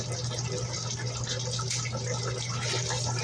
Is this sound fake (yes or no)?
no